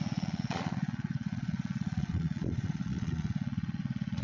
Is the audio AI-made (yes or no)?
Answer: yes